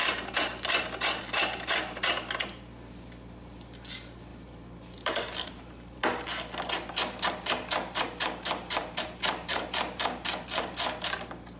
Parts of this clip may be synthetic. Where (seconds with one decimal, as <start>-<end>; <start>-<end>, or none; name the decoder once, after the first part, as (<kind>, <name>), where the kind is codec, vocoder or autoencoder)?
4.3-6.0 (vocoder, BigVGAN v2); 8.8-10.6